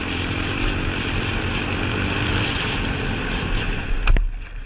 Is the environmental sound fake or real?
real